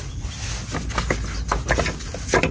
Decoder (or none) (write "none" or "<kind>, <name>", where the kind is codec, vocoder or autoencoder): none